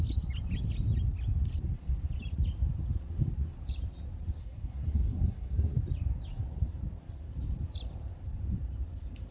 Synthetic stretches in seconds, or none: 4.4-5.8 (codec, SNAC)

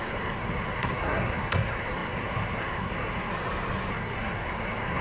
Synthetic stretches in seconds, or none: 0.0-3.3 (codec, SNAC); 3.9-5.0

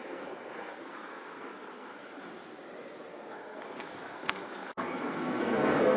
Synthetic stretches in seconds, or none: 0.0-2.2 (codec, SNAC); 3.1-6.0

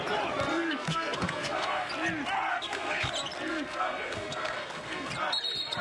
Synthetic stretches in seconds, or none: 0.5-1.9 (codec, SNAC); 2.5-3.1; 3.5-5.1

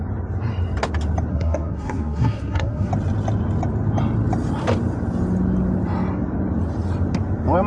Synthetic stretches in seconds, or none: 1.3-2.9 (codec, SNAC)

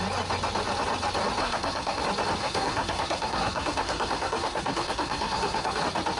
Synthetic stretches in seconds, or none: 1.4-2.0 (codec, SNAC); 2.4-5.8

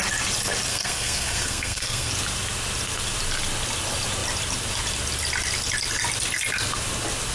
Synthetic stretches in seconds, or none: 0.7-2.1 (codec, SNAC)

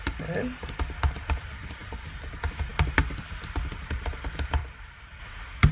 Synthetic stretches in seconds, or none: none